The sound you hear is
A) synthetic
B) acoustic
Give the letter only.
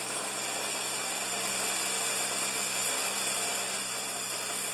B